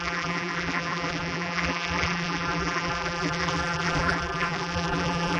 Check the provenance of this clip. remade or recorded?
remade